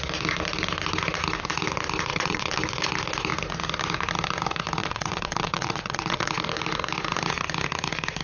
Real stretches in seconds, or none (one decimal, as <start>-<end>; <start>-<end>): 0.0-2.1; 2.6-4.8; 6.3-8.2